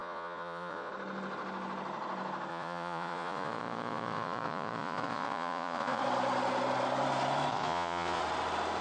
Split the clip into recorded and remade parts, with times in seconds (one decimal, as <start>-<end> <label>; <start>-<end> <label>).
0.0-0.9 remade; 0.9-2.5 recorded; 2.5-6.0 remade; 6.0-7.5 recorded; 7.5-8.2 remade; 8.2-8.8 recorded